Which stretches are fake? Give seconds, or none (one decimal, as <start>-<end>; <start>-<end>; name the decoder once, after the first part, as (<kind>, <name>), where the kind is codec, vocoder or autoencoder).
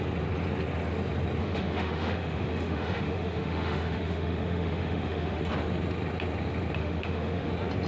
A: 1.4-5.4 (autoencoder, DAC-VAE); 6.8-7.5